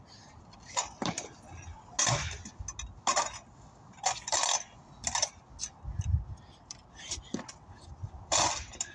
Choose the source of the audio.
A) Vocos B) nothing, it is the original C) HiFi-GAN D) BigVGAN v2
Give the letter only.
B